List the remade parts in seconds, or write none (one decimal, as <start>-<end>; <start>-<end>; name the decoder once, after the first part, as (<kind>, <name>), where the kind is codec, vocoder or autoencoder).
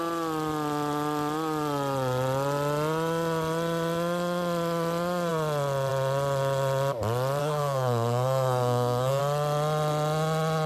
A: 7.4-9.2 (codec, SNAC)